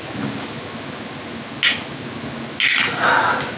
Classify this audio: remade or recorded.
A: recorded